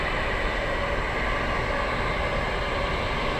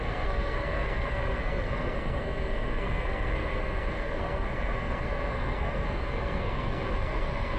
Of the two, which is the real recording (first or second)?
first